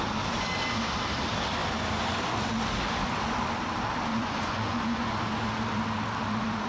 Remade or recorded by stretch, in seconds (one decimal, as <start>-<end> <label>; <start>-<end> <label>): 0.0-4.1 recorded; 4.1-5.1 remade; 5.1-6.7 recorded